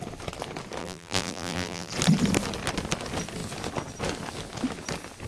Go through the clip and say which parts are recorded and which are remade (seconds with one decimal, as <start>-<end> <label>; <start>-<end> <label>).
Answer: 0.0-0.8 recorded; 0.8-1.9 remade; 1.9-5.3 recorded